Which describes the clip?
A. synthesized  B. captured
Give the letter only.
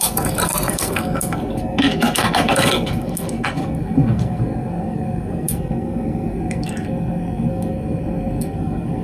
A